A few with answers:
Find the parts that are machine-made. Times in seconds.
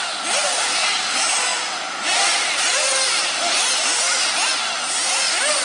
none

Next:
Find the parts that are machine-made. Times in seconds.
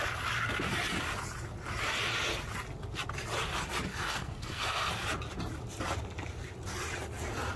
3.9-4.9 (codec, SNAC)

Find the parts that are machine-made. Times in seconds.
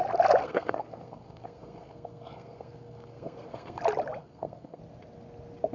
0.4-3.8 (codec, SNAC); 4.2-4.8